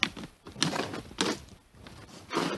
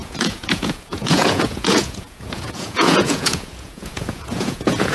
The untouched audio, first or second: first